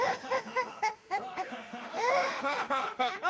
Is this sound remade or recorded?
remade